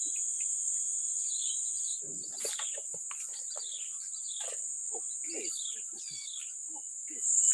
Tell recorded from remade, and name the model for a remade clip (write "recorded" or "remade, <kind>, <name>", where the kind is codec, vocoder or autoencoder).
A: recorded